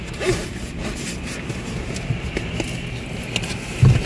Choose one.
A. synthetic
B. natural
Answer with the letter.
B